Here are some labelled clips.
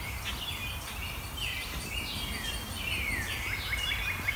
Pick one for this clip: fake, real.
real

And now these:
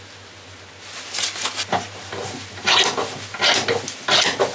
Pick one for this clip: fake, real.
real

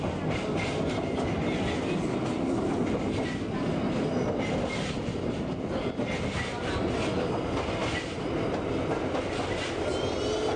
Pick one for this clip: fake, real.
real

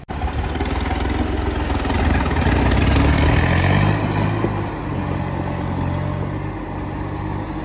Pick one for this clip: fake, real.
real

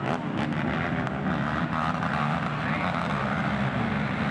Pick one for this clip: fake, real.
real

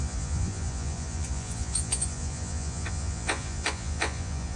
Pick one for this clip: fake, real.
fake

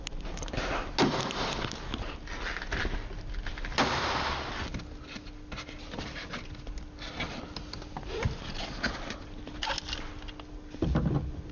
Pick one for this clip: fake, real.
real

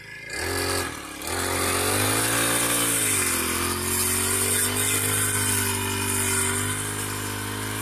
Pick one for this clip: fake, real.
real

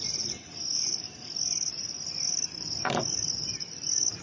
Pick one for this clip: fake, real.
real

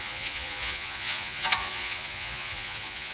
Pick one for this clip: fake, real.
fake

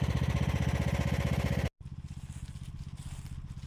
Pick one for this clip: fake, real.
real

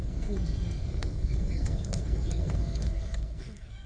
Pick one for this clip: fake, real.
fake